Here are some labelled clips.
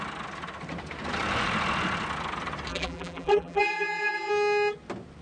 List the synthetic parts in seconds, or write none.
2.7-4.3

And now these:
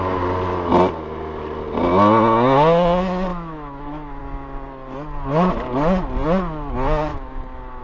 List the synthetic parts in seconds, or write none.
3.3-4.2; 7.1-7.8

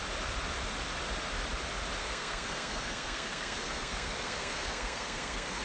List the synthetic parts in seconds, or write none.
2.0-5.6

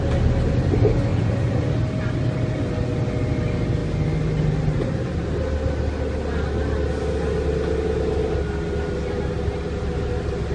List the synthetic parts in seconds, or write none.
none